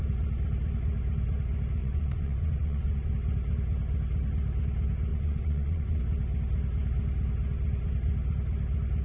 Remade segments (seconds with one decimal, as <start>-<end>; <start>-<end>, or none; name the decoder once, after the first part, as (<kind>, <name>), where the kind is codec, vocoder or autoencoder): 1.8-3.1 (vocoder, Vocos); 5.1-6.0

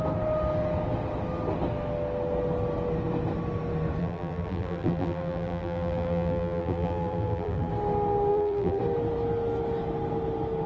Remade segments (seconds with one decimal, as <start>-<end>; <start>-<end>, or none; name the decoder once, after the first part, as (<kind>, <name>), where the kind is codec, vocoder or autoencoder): 4.0-7.7 (vocoder, BigVGAN v2); 8.3-8.8

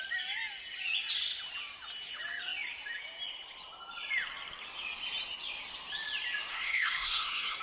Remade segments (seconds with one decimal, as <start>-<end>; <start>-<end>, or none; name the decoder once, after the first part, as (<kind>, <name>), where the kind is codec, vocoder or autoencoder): 6.5-7.6 (codec, SNAC)

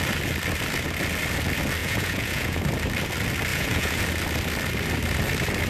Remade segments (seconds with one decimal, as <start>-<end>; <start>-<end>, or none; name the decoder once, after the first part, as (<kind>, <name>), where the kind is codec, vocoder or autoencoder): 1.8-2.6 (vocoder, Vocos); 3.5-4.0

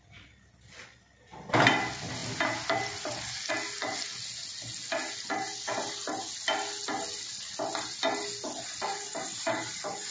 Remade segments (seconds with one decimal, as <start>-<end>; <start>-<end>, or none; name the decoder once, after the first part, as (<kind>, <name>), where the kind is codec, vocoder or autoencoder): none

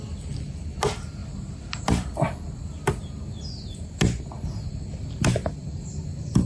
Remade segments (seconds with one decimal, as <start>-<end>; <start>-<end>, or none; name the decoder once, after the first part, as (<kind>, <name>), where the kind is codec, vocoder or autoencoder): none

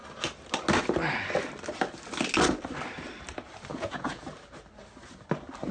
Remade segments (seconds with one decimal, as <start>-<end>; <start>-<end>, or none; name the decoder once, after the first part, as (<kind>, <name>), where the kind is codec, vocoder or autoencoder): 3.7-4.2 (vocoder, Vocos)

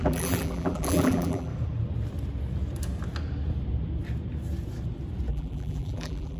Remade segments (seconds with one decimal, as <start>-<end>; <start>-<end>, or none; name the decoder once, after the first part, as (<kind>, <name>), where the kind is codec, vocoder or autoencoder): 0.0-1.5 (vocoder, BigVGAN v2); 5.3-6.4